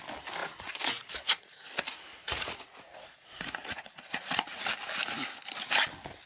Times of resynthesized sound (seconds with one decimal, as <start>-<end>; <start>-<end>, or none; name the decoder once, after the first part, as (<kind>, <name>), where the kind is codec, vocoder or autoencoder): 0.4-1.7 (vocoder, Vocos); 2.1-4.7